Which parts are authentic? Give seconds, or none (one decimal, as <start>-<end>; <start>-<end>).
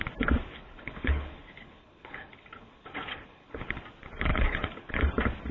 0.0-0.5; 3.8-4.3; 5.0-5.5